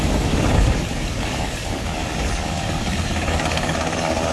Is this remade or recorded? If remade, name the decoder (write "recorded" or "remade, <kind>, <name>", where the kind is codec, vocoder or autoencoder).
remade, codec, DAC